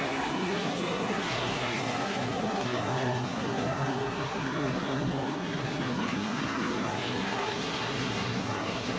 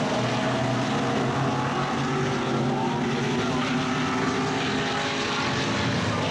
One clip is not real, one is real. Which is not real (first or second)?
first